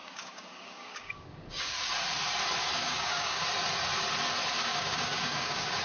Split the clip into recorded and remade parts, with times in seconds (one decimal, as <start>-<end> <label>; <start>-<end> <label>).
0.0-1.9 remade; 1.9-2.8 recorded; 2.8-3.4 remade; 3.4-4.7 recorded; 4.7-5.8 remade